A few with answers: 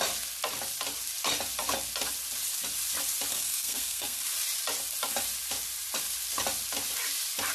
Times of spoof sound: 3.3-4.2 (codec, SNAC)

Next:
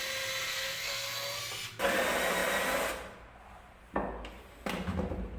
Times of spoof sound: 0.5-1.4 (codec, SNAC)